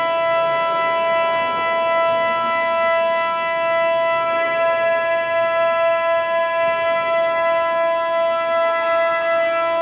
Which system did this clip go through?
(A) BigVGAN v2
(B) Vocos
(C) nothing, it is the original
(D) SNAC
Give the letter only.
C